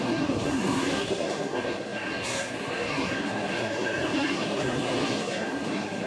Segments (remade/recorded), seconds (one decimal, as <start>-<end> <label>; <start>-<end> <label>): 0.0-6.1 remade

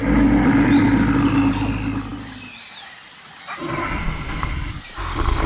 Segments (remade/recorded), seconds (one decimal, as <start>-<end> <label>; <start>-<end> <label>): 0.0-4.0 recorded; 4.0-4.5 remade; 4.5-5.5 recorded

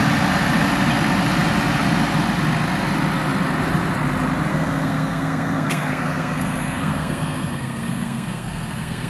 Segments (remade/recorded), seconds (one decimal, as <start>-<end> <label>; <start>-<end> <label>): 0.0-4.5 recorded; 4.5-9.1 remade

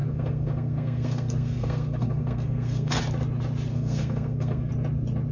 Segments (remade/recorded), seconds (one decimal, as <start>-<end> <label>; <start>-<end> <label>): 0.0-3.0 remade; 3.0-3.7 recorded; 3.7-4.7 remade; 4.7-5.3 recorded

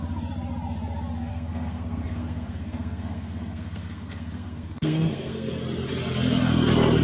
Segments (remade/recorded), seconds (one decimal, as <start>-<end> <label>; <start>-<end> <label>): 0.0-1.3 recorded; 1.3-5.5 remade; 5.5-7.0 recorded

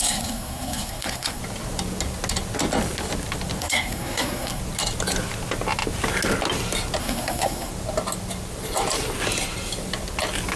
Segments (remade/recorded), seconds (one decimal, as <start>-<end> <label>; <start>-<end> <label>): 0.0-1.4 remade; 1.4-3.6 recorded; 3.6-4.6 remade; 4.6-7.0 recorded; 7.0-7.7 remade; 7.7-10.6 recorded